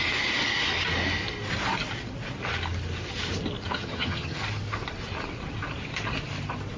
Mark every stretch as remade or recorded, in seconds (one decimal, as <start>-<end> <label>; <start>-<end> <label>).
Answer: 0.0-3.7 recorded; 3.7-4.4 remade; 4.4-6.8 recorded